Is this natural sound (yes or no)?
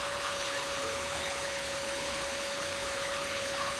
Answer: no